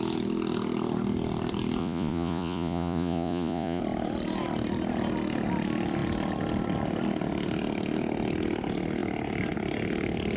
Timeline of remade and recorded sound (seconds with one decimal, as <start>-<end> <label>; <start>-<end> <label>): 0.0-1.8 recorded; 1.8-3.8 remade; 3.8-10.4 recorded